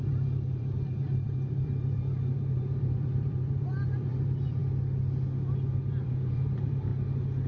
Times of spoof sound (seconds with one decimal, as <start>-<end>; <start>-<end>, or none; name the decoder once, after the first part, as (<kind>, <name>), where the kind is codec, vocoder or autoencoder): 0.0-4.6 (vocoder, BigVGAN v2); 5.8-6.9